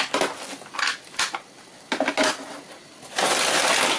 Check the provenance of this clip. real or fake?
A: real